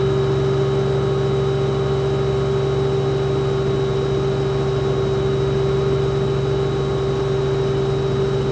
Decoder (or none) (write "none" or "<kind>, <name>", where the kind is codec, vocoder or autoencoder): none